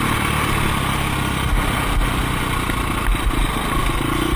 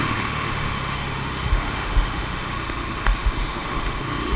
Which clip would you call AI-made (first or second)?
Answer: second